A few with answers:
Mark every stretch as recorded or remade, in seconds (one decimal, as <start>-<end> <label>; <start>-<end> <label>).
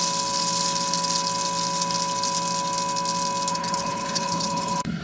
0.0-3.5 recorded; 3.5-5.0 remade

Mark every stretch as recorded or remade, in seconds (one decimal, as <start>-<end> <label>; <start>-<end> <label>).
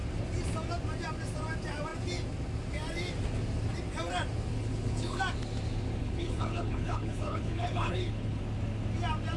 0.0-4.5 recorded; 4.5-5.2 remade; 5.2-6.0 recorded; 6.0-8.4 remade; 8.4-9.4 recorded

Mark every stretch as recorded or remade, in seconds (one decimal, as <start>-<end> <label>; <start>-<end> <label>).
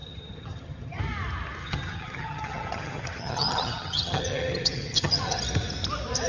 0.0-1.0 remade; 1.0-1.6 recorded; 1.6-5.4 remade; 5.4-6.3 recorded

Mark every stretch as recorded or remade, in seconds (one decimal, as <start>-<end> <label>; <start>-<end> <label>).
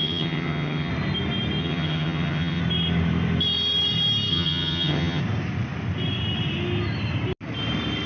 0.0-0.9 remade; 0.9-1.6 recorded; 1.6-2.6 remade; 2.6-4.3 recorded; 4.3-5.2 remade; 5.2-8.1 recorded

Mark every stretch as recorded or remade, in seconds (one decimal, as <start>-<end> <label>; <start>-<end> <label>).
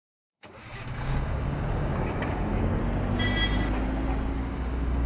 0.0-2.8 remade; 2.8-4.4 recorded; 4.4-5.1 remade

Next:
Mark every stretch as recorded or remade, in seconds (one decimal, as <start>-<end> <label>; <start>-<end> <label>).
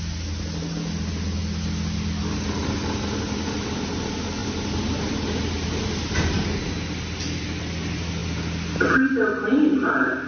0.0-10.3 recorded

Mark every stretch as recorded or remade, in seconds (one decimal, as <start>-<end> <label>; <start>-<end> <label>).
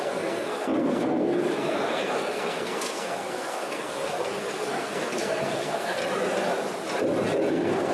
0.0-6.0 remade; 6.0-7.5 recorded; 7.5-7.9 remade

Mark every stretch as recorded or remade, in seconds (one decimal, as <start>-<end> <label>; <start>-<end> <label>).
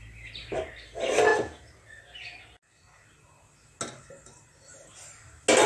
0.0-5.7 recorded